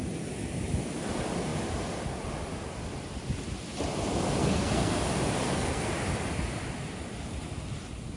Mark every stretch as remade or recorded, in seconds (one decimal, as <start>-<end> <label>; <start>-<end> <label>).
0.0-4.4 recorded; 4.4-5.0 remade; 5.0-5.4 recorded; 5.4-5.9 remade; 5.9-8.2 recorded